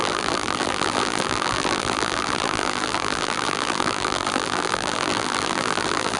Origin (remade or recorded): remade